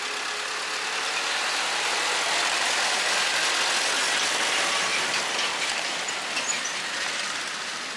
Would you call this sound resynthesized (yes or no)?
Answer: no